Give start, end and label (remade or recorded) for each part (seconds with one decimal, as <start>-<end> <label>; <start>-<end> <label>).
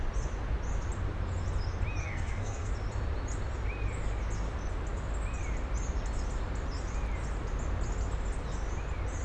0.0-2.0 recorded; 2.0-2.7 remade; 2.7-9.2 recorded